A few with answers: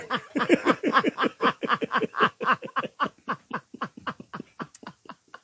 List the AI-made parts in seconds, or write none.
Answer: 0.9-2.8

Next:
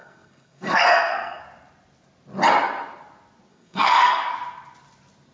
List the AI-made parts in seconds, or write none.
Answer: 0.0-1.4; 3.5-4.3

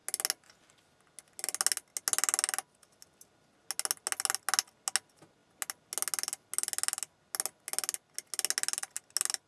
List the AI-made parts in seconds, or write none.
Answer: none

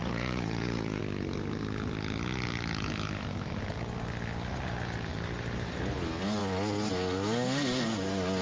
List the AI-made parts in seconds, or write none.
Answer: 0.0-1.0

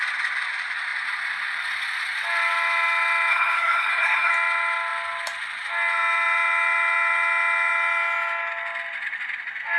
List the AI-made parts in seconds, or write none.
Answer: 3.3-4.3

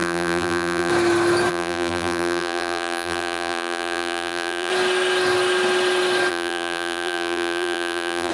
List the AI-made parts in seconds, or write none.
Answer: 0.0-0.9; 1.5-4.7; 6.3-8.3